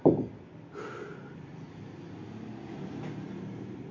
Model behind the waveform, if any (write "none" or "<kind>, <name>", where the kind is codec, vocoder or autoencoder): none